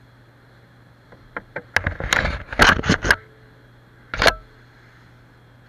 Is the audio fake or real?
real